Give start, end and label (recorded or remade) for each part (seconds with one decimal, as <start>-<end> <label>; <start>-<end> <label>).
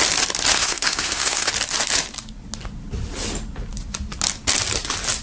0.0-0.5 recorded; 0.5-1.5 remade; 1.5-5.2 recorded